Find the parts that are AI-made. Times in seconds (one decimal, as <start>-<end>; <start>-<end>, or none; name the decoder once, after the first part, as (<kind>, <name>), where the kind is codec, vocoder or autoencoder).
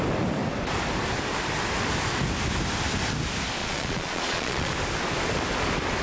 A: 3.6-4.7 (vocoder, Vocos)